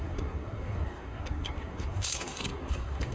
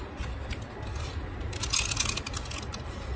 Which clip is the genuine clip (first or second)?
second